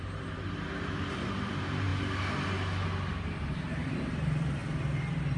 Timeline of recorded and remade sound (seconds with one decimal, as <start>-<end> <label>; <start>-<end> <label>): 0.0-1.9 remade; 1.9-3.4 recorded; 3.4-4.6 remade; 4.6-5.4 recorded